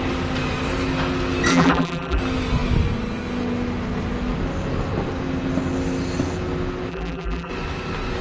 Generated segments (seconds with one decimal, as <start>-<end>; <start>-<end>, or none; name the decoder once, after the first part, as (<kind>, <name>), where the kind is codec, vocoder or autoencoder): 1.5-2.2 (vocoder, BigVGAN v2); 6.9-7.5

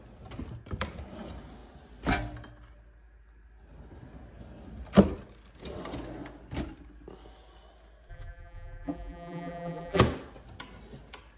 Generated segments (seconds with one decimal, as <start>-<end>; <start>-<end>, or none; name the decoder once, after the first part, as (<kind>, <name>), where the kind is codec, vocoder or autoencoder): 8.1-10.0 (vocoder, BigVGAN v2)

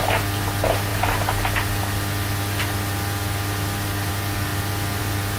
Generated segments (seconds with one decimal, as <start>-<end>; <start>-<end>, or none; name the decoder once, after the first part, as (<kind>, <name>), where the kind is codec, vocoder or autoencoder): none